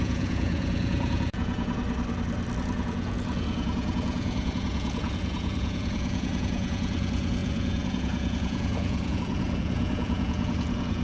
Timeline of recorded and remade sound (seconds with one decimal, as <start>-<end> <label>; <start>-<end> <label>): 0.0-1.8 remade; 1.8-2.6 recorded; 2.6-11.0 remade